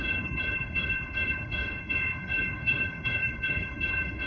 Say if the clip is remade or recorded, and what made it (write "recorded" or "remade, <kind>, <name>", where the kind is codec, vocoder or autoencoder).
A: remade, codec, HILCodec